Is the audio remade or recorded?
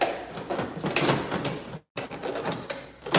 recorded